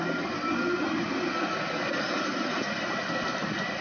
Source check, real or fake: real